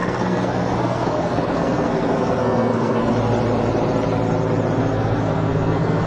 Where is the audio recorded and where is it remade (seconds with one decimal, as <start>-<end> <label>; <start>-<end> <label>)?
0.0-3.1 remade; 3.1-4.8 recorded; 4.8-6.1 remade